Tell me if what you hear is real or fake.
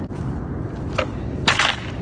real